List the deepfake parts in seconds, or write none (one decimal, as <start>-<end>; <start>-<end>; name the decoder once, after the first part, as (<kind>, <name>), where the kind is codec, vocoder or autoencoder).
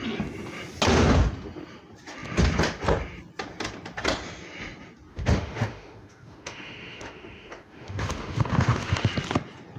5.1-9.1 (autoencoder, DAC-VAE)